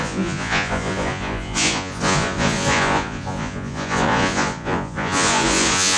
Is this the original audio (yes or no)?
no